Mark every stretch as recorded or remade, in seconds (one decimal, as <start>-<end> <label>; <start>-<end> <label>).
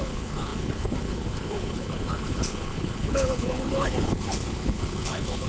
0.0-5.5 remade